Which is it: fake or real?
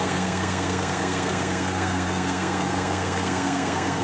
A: fake